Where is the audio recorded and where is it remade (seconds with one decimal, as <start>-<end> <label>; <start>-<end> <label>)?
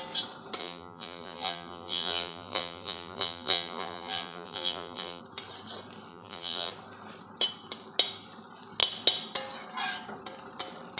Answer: 0.0-0.6 recorded; 0.6-5.2 remade; 5.2-6.1 recorded; 6.1-6.7 remade; 6.7-11.0 recorded